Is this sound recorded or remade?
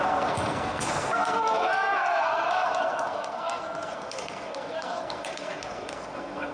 remade